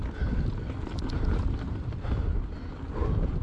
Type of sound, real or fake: real